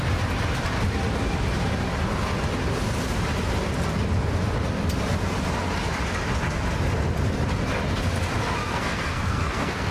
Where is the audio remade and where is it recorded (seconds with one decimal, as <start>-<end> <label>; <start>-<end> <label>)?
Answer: 0.0-8.7 recorded; 8.7-9.9 remade